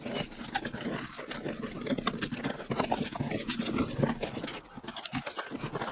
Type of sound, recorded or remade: recorded